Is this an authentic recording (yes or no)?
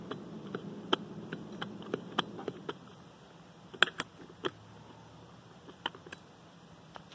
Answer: yes